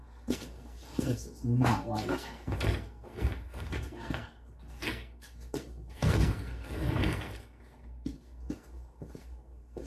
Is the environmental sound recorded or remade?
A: remade